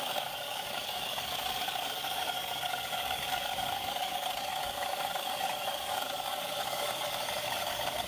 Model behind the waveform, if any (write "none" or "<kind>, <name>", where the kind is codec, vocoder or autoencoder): codec, DAC